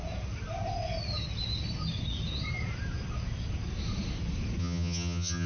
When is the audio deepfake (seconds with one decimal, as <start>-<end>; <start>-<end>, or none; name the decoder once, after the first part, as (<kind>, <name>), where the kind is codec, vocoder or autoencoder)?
4.6-5.5 (vocoder, HiFi-GAN)